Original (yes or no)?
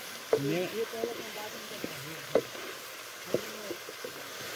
yes